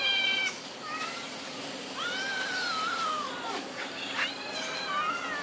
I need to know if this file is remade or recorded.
recorded